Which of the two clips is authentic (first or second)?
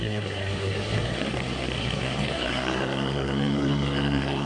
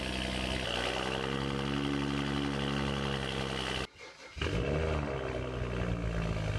second